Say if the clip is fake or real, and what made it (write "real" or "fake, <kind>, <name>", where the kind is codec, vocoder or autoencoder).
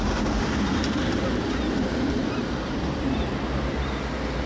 real